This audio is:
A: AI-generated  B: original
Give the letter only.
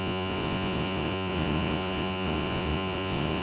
A